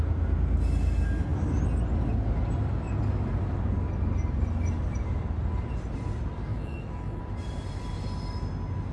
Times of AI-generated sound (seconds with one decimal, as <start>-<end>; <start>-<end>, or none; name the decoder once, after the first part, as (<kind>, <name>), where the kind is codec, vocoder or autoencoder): 6.5-7.2 (autoencoder, DAC-VAE)